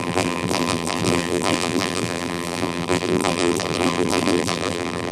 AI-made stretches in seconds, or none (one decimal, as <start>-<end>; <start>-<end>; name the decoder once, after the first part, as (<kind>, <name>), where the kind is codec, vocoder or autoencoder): 0.0-5.1 (vocoder, BigVGAN v2)